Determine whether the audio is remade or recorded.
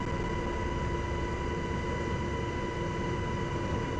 recorded